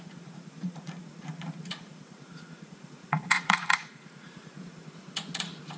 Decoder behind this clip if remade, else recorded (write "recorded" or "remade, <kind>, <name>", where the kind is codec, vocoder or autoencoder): remade, vocoder, Vocos